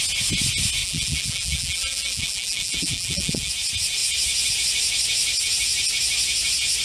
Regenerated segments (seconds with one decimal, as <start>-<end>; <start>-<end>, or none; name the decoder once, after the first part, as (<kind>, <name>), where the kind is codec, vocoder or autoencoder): 0.8-3.5 (vocoder, BigVGAN v2)